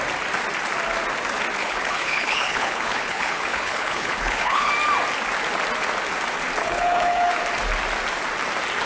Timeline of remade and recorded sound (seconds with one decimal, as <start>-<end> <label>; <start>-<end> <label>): 0.0-1.6 recorded; 1.6-4.7 remade; 4.7-6.6 recorded; 6.6-7.3 remade; 7.3-8.9 recorded